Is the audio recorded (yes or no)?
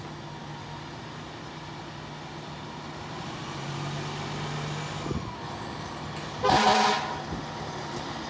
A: yes